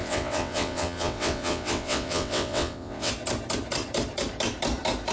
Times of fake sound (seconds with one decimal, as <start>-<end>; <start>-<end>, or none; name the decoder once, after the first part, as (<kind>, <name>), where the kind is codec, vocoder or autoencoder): 0.0-3.1 (vocoder, WaveNeXt)